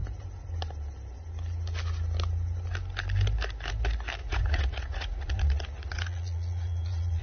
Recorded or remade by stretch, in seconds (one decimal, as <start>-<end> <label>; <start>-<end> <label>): 0.0-4.2 recorded; 4.2-7.2 remade